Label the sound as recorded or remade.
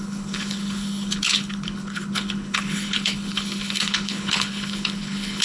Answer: remade